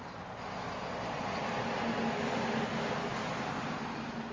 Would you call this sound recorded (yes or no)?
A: yes